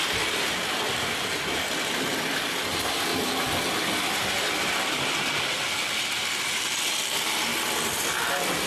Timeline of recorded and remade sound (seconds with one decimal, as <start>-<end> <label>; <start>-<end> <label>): 0.0-8.7 recorded